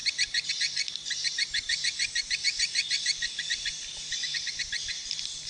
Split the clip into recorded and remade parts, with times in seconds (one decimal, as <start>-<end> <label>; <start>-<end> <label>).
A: 0.0-5.5 remade